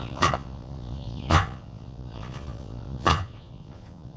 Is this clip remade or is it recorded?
remade